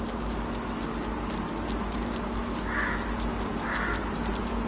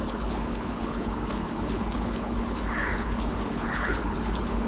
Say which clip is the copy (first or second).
second